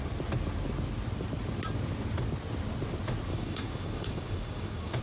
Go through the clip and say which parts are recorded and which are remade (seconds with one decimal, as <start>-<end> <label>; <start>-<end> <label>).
0.0-3.3 recorded; 3.3-5.0 remade